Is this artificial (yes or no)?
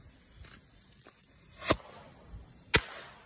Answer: no